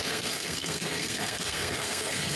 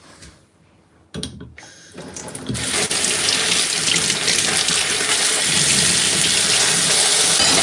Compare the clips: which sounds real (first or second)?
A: second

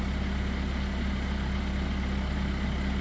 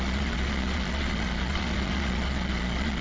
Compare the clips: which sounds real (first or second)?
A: first